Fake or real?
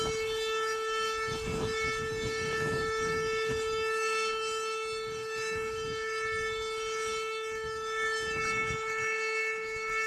fake